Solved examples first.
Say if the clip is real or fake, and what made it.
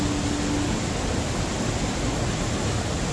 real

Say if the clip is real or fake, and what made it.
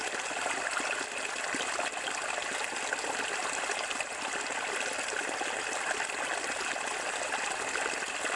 real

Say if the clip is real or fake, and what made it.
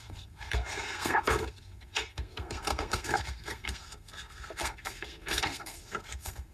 fake, codec, SNAC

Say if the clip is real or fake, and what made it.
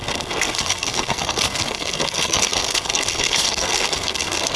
fake, codec, SNAC